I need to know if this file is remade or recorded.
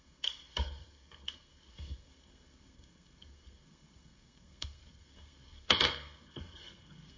remade